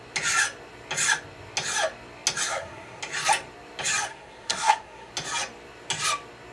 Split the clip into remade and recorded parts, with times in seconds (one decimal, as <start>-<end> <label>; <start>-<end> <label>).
0.0-2.5 recorded; 2.5-3.0 remade; 3.0-4.1 recorded; 4.1-5.1 remade; 5.1-6.5 recorded

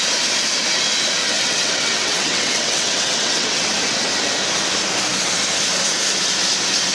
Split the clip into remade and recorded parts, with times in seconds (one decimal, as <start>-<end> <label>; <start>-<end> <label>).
0.0-1.2 recorded; 1.2-3.7 remade; 3.7-6.9 recorded

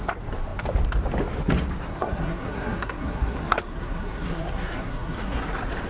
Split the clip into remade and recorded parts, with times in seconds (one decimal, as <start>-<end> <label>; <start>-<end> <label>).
0.0-1.9 recorded; 1.9-5.4 remade; 5.4-5.9 recorded

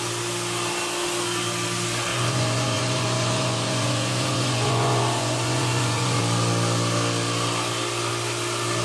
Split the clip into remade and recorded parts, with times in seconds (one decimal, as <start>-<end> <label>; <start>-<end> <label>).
0.0-2.1 recorded; 2.1-6.2 remade; 6.2-8.8 recorded

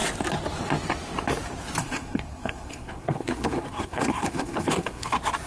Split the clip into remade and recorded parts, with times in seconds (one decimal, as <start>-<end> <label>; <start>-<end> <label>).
0.0-1.8 recorded; 1.8-5.1 remade; 5.1-5.5 recorded